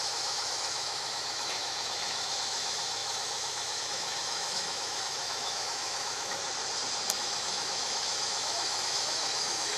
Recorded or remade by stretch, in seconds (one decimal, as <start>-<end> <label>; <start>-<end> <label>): 0.0-6.4 remade; 6.4-7.1 recorded; 7.1-9.8 remade

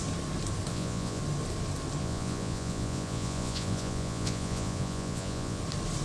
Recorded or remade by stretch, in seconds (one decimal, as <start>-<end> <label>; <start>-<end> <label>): 0.0-0.7 recorded; 0.7-1.2 remade; 1.2-2.0 recorded; 2.0-5.6 remade; 5.6-6.0 recorded

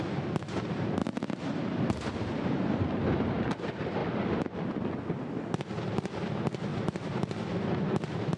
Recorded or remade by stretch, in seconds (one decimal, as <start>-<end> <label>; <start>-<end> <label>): 0.0-1.0 recorded; 1.0-1.8 remade; 1.8-6.7 recorded; 6.7-7.2 remade; 7.2-8.4 recorded